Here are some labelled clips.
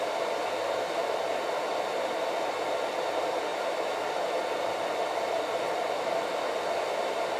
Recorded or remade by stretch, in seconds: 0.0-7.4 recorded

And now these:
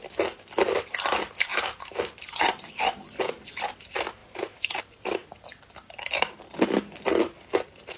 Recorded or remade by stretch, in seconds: 0.0-1.5 recorded; 1.5-2.7 remade; 2.7-4.2 recorded; 4.2-4.8 remade; 4.8-8.0 recorded

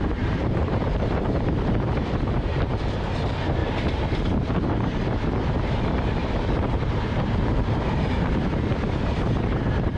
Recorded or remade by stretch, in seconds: 0.0-3.6 remade; 3.6-6.2 recorded; 6.2-10.0 remade

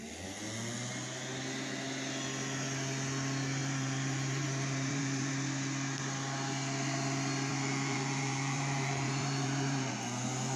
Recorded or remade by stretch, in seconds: 0.0-3.6 recorded; 3.6-5.3 remade; 5.3-7.5 recorded; 7.5-9.9 remade; 9.9-10.6 recorded

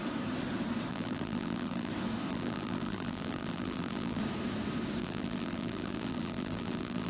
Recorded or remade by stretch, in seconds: 0.0-0.9 recorded; 0.9-1.9 remade; 1.9-2.3 recorded; 2.3-4.2 remade; 4.2-5.0 recorded; 5.0-7.1 remade

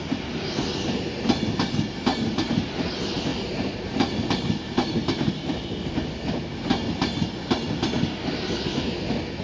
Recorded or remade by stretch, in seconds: 0.0-2.1 recorded; 2.1-2.7 remade; 2.7-3.3 recorded; 3.3-5.3 remade; 5.3-9.4 recorded

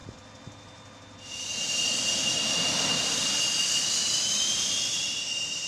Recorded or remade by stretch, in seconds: 0.0-5.7 recorded